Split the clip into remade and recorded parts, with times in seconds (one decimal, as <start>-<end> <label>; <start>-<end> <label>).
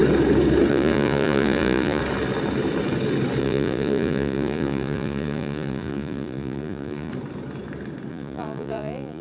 0.0-0.7 recorded; 0.7-2.0 remade; 2.0-3.4 recorded; 3.4-7.1 remade; 7.1-8.1 recorded; 8.1-9.2 remade